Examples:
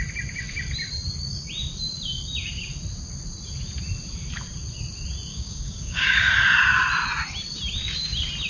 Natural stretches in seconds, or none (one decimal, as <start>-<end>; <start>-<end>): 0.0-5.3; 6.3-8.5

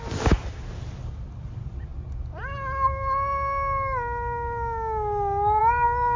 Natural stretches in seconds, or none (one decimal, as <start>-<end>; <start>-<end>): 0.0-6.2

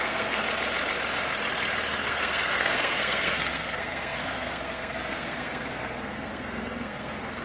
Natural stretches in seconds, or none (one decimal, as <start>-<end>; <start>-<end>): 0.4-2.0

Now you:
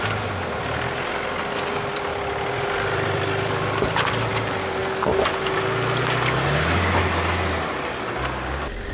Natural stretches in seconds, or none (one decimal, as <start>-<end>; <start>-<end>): 0.0-1.9; 4.3-8.9

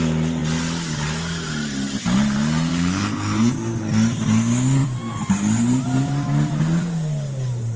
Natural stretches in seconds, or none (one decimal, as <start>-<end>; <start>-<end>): 0.0-2.7; 3.5-7.8

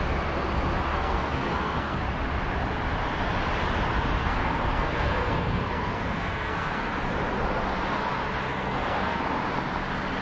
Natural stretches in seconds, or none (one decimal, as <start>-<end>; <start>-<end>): 0.0-0.9; 2.0-4.2; 6.9-8.5; 9.2-10.2

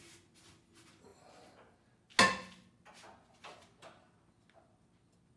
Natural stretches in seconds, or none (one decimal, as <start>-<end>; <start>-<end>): 0.0-5.4

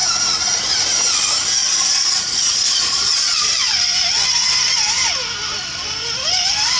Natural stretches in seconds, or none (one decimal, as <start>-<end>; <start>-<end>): 0.0-1.6; 3.5-6.8